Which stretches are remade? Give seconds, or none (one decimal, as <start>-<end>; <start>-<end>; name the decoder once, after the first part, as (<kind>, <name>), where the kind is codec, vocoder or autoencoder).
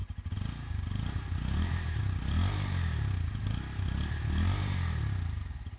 none